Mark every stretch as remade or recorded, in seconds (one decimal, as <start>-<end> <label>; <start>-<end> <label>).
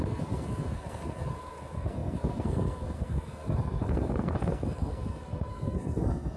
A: 0.0-6.4 remade